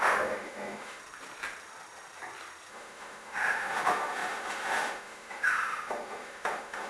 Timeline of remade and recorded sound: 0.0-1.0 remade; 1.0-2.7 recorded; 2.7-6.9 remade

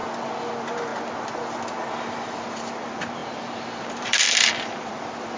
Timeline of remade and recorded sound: 0.0-0.5 recorded; 0.5-0.9 remade; 0.9-2.1 recorded; 2.1-5.4 remade

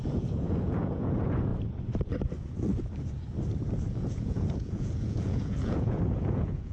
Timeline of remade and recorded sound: 0.0-1.5 remade; 1.5-3.9 recorded; 3.9-6.7 remade

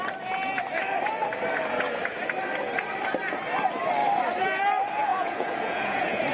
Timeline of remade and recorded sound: 0.0-5.1 recorded; 5.1-6.3 remade

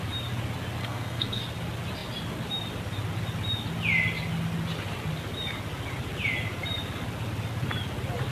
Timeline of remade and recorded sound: 0.0-0.8 recorded; 0.8-1.4 remade; 1.4-8.3 recorded

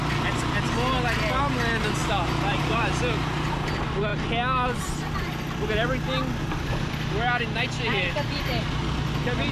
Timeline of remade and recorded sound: 0.0-9.5 recorded

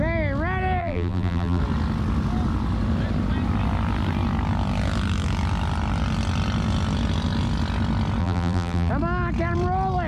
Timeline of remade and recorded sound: 0.0-0.8 recorded; 0.8-1.6 remade; 1.6-8.2 recorded; 8.2-8.9 remade; 8.9-10.1 recorded

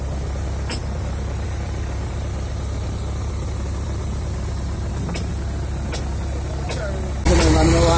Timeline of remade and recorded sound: 0.0-0.8 recorded; 0.8-4.9 remade; 4.9-8.0 recorded